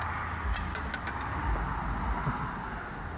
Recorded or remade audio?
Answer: recorded